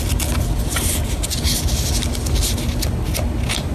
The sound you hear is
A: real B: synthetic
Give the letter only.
A